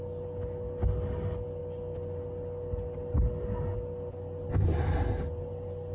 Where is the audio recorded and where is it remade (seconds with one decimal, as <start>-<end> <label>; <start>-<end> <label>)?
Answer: 0.0-5.9 recorded